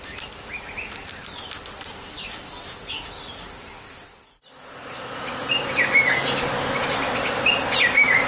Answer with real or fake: real